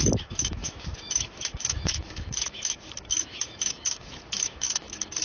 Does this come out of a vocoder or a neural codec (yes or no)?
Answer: yes